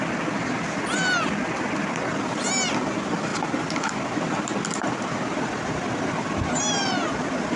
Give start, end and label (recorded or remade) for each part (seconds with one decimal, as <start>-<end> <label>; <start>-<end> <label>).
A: 0.0-3.3 recorded; 3.3-3.9 remade; 3.9-7.0 recorded; 7.0-7.6 remade